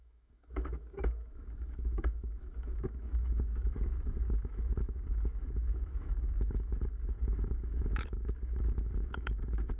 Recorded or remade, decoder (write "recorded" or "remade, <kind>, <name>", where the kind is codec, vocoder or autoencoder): remade, autoencoder, DAC-VAE